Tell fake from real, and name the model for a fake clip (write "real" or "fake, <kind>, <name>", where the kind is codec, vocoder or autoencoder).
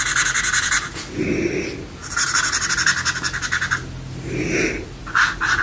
real